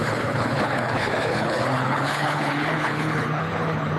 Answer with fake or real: fake